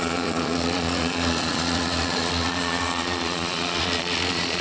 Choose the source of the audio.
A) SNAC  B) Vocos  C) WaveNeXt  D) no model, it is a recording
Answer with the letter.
B